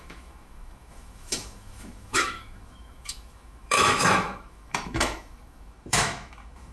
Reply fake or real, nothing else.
fake